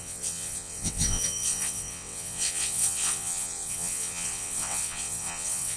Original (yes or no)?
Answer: no